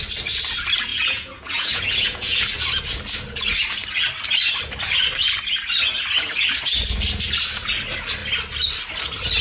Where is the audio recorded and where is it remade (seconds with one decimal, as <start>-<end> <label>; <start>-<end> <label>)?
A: 0.0-0.9 recorded; 0.9-2.4 remade; 2.4-9.4 recorded